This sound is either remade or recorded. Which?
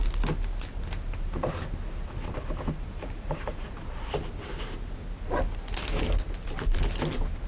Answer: recorded